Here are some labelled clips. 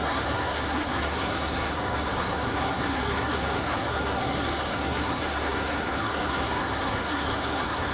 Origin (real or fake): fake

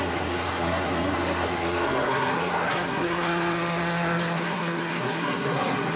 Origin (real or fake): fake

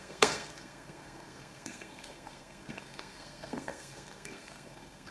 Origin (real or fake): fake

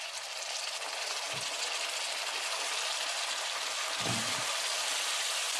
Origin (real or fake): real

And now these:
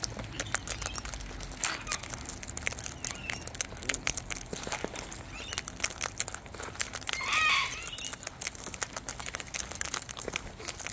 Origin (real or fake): real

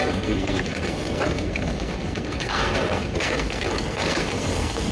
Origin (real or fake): fake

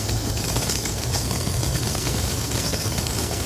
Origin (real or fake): fake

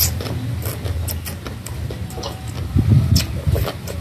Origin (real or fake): real